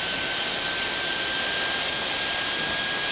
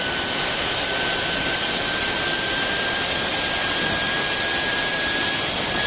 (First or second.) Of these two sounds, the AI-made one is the second